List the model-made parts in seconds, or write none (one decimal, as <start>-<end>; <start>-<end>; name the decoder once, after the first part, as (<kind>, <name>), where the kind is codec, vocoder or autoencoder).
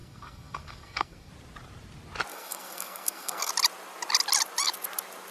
0.0-1.3 (codec, SNAC); 2.3-3.5